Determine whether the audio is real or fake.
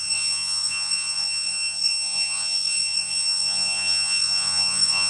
fake